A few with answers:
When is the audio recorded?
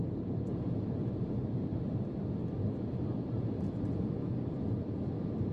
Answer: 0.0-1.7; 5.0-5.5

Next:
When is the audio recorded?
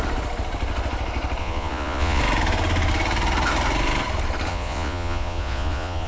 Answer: 0.0-1.4; 2.2-4.5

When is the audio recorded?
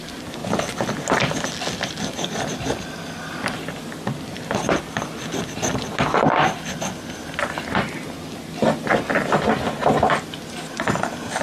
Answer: 0.0-11.4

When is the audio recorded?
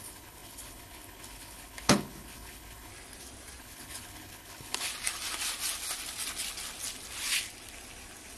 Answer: 2.9-3.6; 4.9-8.4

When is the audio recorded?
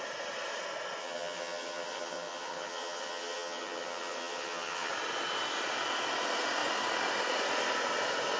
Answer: 0.0-1.0; 4.9-8.4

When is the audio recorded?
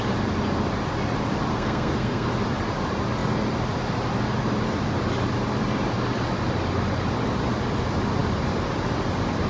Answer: 0.0-1.5; 2.3-9.5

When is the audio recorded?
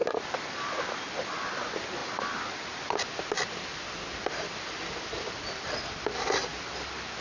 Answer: 0.0-7.2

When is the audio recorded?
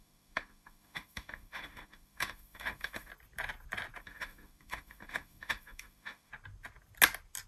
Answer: 3.1-4.0; 6.3-7.5